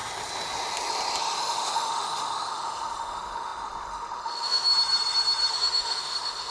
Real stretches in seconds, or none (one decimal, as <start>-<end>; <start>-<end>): 0.0-1.2; 4.7-5.5